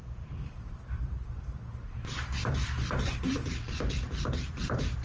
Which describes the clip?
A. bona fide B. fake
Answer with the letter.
B